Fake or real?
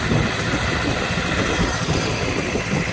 real